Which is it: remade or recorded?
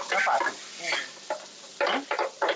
recorded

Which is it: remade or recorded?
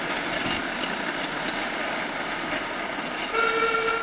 recorded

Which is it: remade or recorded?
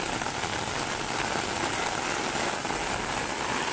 recorded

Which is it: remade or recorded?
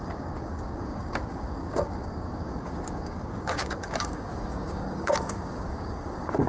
remade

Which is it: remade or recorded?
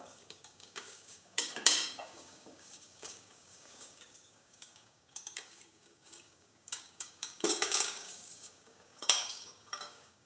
remade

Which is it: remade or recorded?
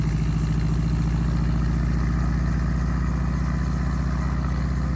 recorded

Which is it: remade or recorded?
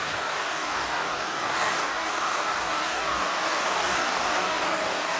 remade